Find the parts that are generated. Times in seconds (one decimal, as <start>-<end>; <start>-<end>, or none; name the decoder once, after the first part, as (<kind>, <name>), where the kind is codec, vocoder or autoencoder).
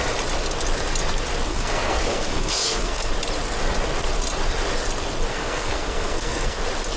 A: 1.5-3.1 (codec, SNAC); 5.3-6.6